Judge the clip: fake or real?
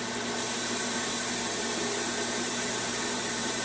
fake